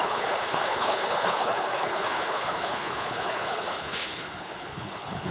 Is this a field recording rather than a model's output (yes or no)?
no